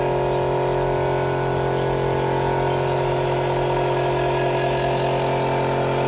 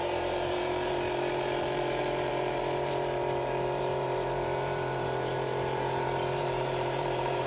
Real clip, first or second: first